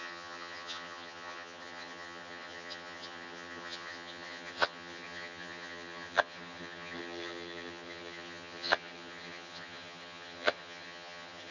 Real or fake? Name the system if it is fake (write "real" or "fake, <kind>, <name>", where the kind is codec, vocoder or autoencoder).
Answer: fake, vocoder, HiFi-GAN